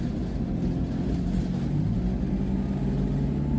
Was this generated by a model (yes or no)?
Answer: no